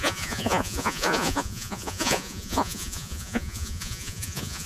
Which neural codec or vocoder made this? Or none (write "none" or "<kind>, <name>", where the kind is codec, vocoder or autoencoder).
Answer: vocoder, Vocos